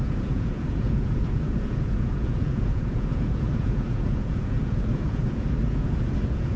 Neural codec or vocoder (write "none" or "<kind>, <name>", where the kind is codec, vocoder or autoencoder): vocoder, Vocos